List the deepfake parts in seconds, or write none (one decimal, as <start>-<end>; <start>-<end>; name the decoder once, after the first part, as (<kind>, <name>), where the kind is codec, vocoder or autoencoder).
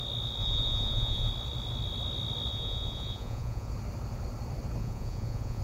0.4-1.3 (vocoder, Vocos); 2.5-3.7; 4.8-5.6